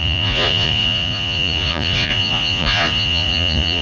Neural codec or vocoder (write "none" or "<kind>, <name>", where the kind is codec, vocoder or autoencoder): vocoder, Vocos